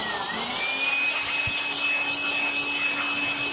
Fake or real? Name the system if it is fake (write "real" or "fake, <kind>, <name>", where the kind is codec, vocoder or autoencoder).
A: real